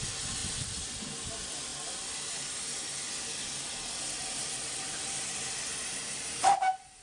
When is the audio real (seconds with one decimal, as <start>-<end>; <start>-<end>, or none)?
0.0-4.2; 5.5-7.0